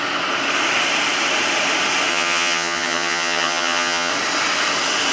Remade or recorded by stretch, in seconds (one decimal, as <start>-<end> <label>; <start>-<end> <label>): 0.0-2.1 recorded; 2.1-4.1 remade; 4.1-5.1 recorded